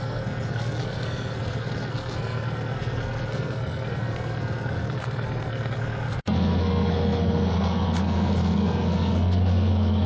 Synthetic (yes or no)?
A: yes